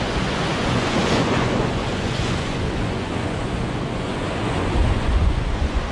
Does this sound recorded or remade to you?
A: remade